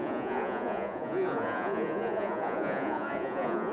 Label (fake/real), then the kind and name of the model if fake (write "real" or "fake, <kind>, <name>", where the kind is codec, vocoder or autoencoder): fake, vocoder, Vocos